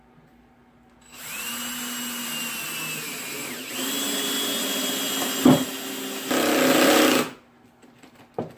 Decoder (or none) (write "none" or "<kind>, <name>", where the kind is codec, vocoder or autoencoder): none